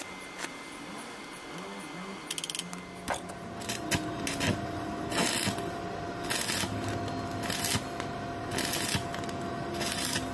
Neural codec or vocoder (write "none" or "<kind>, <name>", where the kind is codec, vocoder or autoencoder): none